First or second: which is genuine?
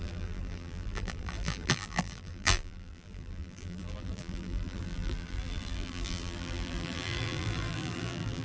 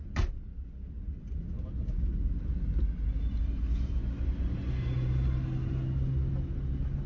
second